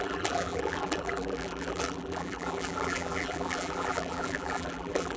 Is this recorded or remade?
remade